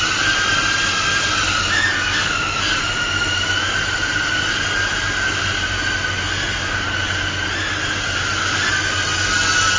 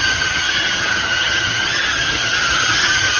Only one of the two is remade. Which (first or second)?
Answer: second